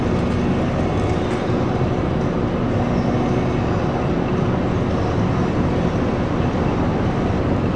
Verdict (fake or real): real